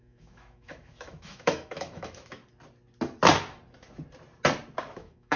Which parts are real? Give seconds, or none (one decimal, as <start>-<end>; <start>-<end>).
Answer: 2.4-4.8